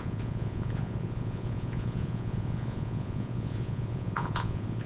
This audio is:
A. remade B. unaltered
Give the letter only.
A